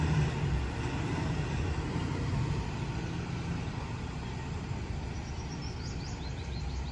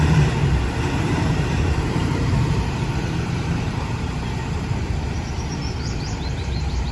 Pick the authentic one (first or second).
first